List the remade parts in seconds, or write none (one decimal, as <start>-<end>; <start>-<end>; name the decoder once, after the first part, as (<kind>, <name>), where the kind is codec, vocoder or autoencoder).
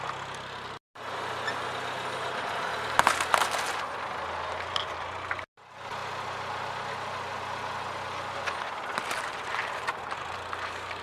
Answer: none